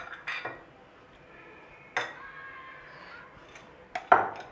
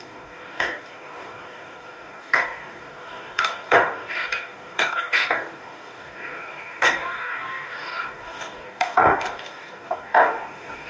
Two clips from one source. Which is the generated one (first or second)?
second